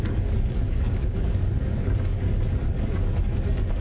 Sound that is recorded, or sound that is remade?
remade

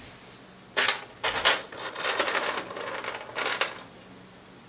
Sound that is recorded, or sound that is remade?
recorded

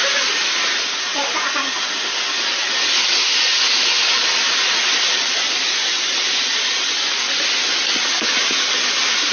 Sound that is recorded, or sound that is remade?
recorded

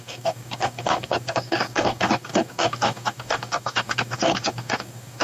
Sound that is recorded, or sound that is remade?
remade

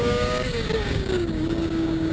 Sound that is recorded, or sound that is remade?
remade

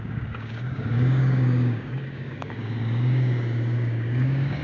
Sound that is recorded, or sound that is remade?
remade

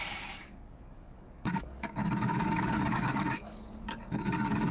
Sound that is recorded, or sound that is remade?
remade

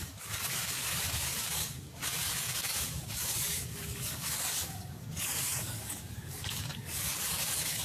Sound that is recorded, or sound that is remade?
remade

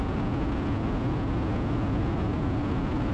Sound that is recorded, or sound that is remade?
recorded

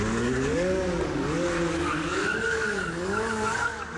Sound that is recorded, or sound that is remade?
remade